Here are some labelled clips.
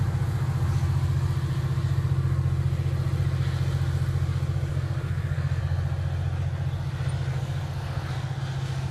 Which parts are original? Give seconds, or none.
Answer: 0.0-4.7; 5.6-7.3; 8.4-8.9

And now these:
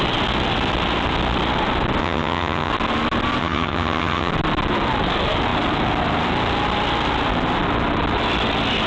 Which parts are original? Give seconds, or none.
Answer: 0.0-2.0; 2.7-3.4; 4.3-8.9

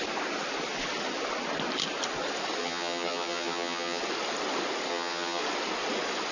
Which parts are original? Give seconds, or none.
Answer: 0.0-2.6; 4.0-4.9; 5.4-6.3